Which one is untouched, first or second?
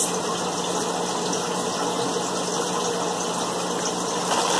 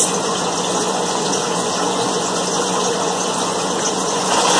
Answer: first